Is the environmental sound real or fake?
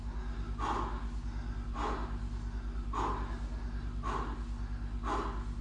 real